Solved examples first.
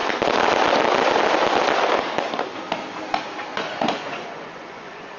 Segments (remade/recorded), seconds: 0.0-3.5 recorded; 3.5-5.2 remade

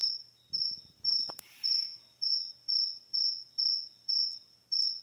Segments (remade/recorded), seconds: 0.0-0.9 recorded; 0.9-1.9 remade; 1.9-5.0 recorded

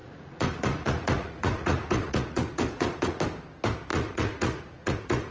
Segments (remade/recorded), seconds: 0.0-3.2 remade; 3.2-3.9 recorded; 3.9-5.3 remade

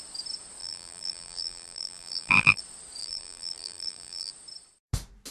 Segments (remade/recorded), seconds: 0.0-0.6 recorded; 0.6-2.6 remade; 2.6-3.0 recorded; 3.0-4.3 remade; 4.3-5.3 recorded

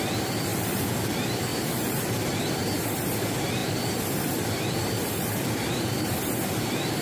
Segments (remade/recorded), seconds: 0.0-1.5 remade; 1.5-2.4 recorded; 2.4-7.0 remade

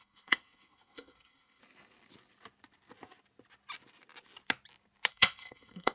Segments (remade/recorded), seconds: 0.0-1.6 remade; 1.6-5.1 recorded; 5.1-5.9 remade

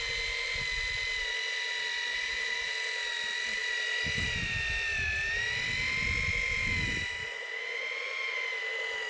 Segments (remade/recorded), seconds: 0.0-2.1 recorded; 2.1-2.7 remade; 2.7-7.2 recorded; 7.2-8.4 remade; 8.4-9.1 recorded

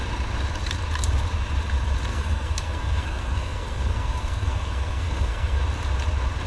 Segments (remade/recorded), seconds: 0.0-2.1 recorded; 2.1-5.6 remade; 5.6-6.5 recorded